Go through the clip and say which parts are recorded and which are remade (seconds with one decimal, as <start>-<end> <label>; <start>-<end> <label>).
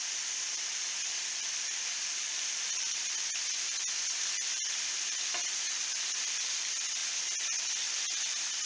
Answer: 0.0-7.0 remade; 7.0-7.8 recorded; 7.8-8.7 remade